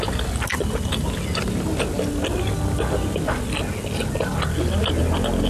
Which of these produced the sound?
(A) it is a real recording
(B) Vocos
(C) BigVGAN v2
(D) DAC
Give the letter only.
A